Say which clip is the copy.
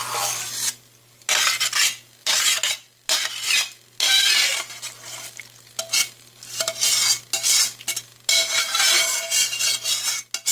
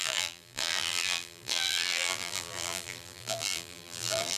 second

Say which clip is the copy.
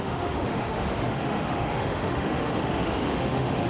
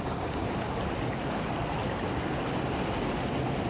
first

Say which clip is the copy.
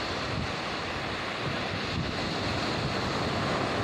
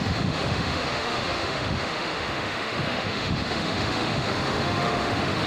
second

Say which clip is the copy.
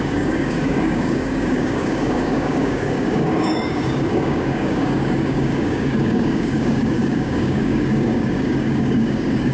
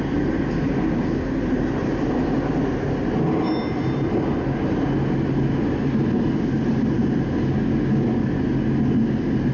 first